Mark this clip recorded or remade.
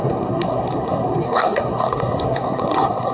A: remade